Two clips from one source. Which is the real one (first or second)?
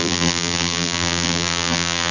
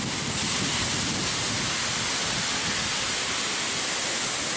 second